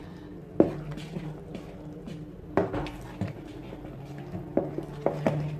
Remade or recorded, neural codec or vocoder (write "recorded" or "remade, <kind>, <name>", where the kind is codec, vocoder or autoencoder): recorded